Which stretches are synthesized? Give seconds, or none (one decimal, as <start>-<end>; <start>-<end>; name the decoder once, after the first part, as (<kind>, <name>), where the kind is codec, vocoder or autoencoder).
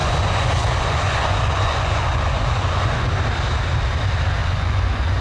0.0-3.1 (vocoder, Vocos); 4.4-5.2